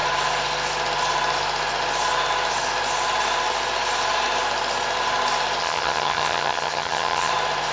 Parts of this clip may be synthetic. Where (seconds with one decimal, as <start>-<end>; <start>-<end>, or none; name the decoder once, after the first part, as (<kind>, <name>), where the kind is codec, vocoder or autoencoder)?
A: 5.6-7.3 (vocoder, HiFi-GAN)